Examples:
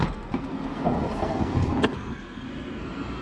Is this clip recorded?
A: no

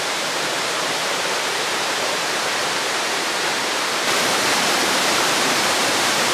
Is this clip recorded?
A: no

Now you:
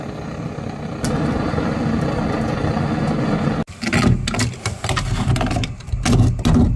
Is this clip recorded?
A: yes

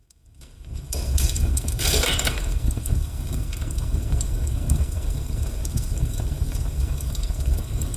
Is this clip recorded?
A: no